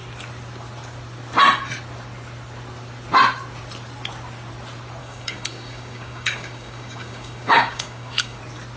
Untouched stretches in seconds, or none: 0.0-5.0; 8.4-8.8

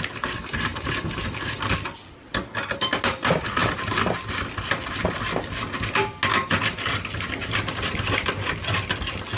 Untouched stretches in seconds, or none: 0.0-9.4